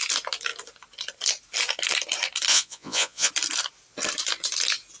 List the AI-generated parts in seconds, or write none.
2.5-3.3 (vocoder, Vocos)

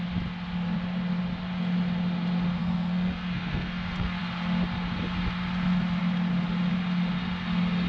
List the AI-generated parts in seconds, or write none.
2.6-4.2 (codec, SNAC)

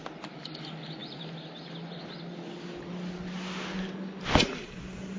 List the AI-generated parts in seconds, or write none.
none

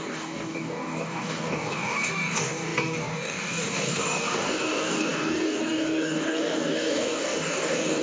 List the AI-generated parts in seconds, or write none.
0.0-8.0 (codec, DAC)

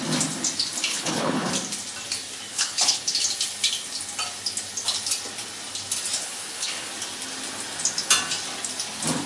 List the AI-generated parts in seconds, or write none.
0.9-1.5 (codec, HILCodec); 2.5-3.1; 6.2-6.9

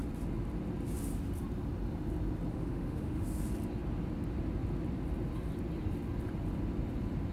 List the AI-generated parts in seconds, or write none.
2.5-3.2 (autoencoder, DAC-VAE)

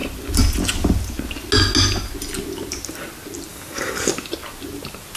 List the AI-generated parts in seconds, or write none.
3.5-4.1 (codec, DAC)